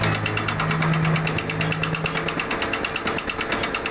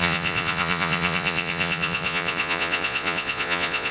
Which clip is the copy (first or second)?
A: second